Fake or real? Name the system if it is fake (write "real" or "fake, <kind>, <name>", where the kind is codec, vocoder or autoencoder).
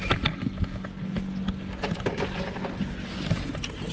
real